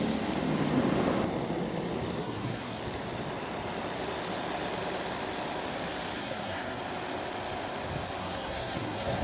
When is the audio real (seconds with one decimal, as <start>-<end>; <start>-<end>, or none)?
0.0-2.2; 2.8-6.2; 6.8-8.2